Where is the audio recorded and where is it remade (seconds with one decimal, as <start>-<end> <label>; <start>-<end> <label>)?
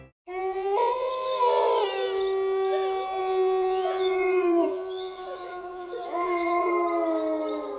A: 0.0-0.4 recorded; 0.4-1.1 remade; 1.1-3.2 recorded; 3.2-6.7 remade; 6.7-7.8 recorded